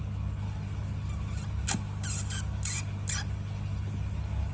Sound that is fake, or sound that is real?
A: real